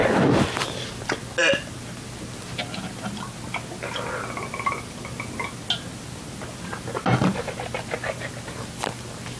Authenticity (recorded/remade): recorded